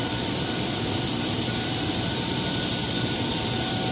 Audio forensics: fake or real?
fake